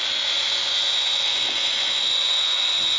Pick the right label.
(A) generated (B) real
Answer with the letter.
A